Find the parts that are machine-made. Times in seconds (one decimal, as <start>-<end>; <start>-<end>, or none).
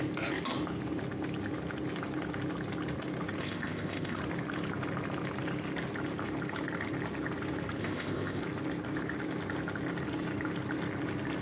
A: 3.4-4.2; 7.8-8.4